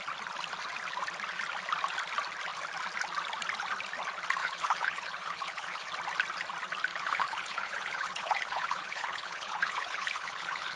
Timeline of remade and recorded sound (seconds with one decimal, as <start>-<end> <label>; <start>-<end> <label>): 0.0-4.4 recorded; 4.4-5.9 remade; 5.9-6.9 recorded; 6.9-10.8 remade